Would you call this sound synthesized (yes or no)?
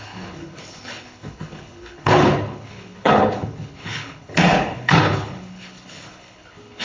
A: yes